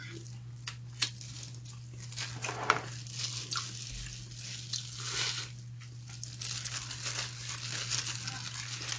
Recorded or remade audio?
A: recorded